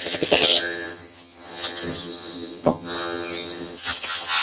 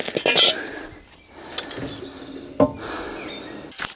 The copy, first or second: first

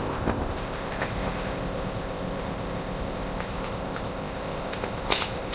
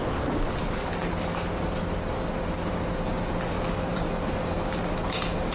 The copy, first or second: first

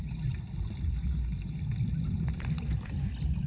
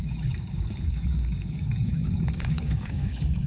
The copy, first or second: second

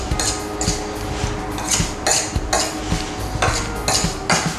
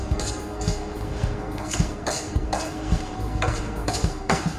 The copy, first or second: second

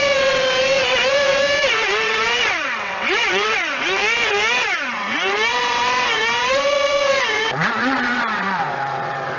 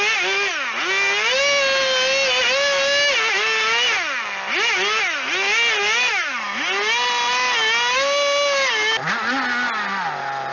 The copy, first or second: first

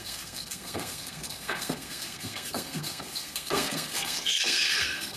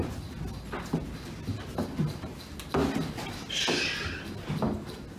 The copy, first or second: first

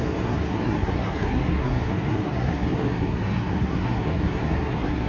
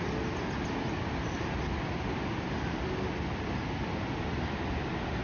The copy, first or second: first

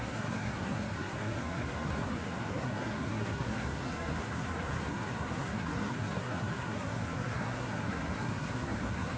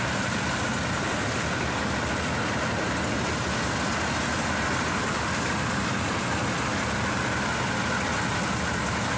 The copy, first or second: first